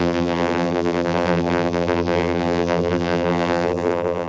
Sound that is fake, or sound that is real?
fake